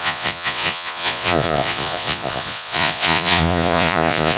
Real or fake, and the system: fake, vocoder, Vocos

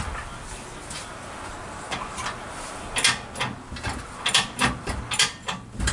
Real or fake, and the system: real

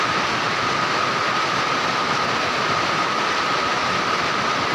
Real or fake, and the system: real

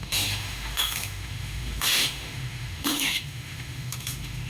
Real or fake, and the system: fake, autoencoder, DAC-VAE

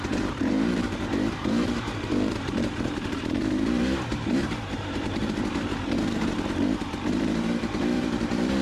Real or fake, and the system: fake, vocoder, BigVGAN v2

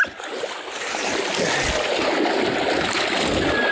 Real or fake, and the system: real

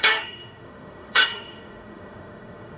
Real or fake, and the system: fake, autoencoder, DAC-VAE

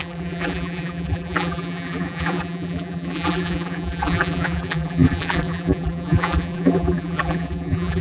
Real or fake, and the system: fake, vocoder, BigVGAN v2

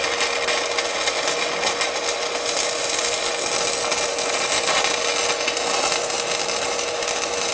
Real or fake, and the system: real